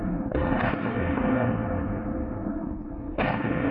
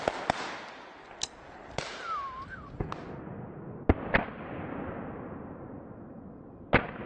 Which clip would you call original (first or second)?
second